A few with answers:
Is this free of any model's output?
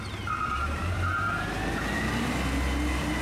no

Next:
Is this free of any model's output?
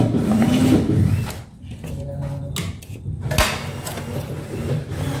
yes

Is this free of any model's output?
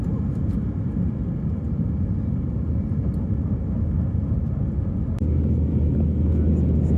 yes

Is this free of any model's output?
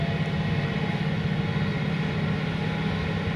yes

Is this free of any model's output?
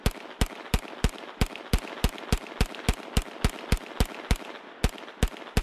yes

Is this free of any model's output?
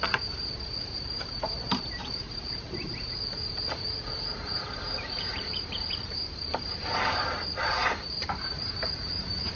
no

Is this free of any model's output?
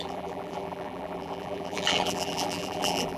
no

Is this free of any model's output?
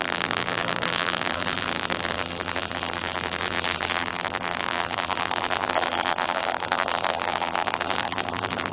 no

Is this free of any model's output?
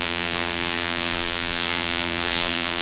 no